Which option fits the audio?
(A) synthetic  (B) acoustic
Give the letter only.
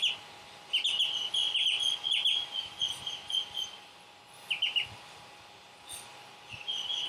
B